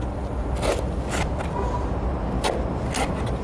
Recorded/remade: recorded